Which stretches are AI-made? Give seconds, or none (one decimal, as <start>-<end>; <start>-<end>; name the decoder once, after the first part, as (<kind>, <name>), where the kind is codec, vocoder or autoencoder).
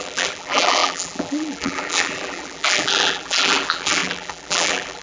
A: 0.0-5.0 (vocoder, BigVGAN v2)